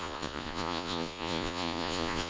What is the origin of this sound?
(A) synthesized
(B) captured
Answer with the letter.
A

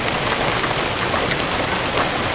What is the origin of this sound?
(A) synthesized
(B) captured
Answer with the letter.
B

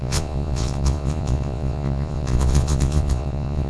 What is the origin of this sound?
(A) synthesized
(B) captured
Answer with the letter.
A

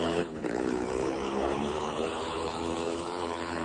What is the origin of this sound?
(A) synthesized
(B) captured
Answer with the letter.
A